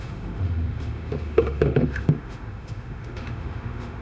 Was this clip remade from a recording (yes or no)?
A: yes